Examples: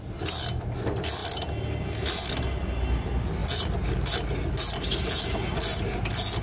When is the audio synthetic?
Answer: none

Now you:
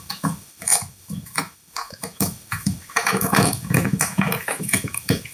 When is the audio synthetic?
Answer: 0.0-5.3 (autoencoder, DAC-VAE)